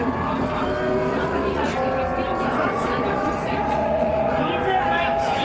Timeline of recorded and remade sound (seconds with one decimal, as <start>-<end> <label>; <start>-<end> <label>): 0.0-1.1 recorded; 1.1-1.7 remade; 1.7-2.6 recorded; 2.6-4.4 remade; 4.4-5.4 recorded